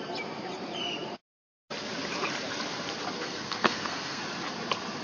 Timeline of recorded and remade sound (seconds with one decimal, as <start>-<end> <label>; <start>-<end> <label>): 0.0-3.2 recorded; 3.2-4.2 remade; 4.2-5.0 recorded

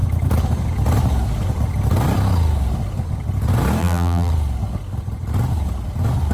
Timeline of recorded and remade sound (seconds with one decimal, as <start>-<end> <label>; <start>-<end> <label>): 0.0-3.8 recorded; 3.8-4.3 remade; 4.3-6.3 recorded

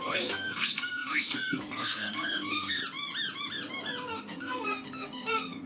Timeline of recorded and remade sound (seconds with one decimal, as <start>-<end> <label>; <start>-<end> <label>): 0.0-2.8 remade; 2.8-4.1 recorded; 4.1-5.7 remade

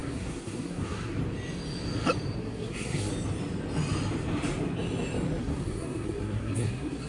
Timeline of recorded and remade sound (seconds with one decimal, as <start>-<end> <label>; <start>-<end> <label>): 0.0-1.2 remade; 1.2-2.4 recorded; 2.4-3.1 remade; 3.1-5.4 recorded; 5.4-7.1 remade

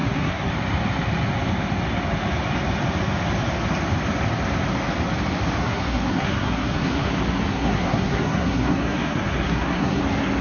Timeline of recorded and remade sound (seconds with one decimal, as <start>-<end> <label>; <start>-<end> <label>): 0.0-0.5 remade; 0.5-5.6 recorded; 5.6-7.1 remade; 7.1-7.5 recorded; 7.5-10.0 remade; 10.0-10.4 recorded

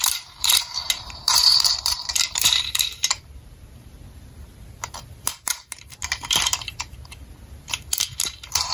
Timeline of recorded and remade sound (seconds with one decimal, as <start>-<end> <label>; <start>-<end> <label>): 0.0-6.2 remade; 6.2-7.5 recorded; 7.5-8.7 remade